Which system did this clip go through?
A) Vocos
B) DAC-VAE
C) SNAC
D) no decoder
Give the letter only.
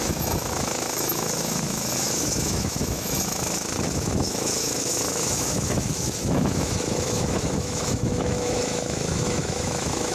B